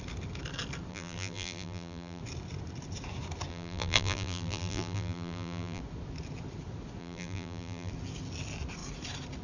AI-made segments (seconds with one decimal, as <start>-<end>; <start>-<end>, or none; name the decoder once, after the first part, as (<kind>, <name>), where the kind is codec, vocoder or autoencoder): 0.9-2.2 (vocoder, BigVGAN v2); 3.5-5.8; 7.0-7.9